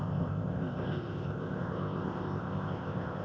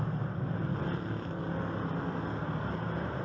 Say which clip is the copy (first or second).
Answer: first